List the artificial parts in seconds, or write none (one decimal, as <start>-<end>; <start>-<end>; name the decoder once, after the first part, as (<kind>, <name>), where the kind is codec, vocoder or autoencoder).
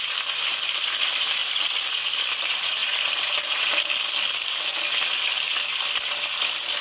2.8-3.7 (vocoder, BigVGAN v2)